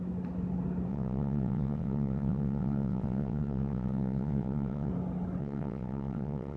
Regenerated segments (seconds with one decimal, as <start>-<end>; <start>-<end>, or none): 0.9-4.9; 5.4-6.6